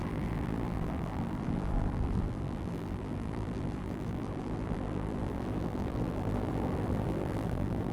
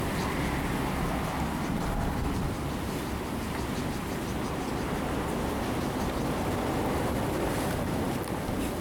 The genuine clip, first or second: second